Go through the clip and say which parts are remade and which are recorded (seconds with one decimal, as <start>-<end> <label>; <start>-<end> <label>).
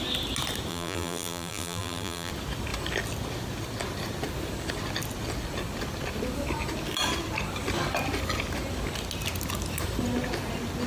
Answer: 0.0-0.7 recorded; 0.7-2.3 remade; 2.3-10.9 recorded